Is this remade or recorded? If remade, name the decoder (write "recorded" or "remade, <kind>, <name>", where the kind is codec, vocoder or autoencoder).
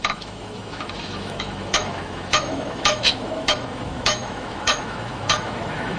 remade, autoencoder, DAC-VAE